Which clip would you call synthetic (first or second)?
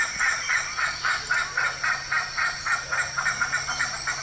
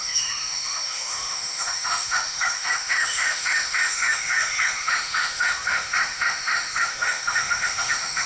second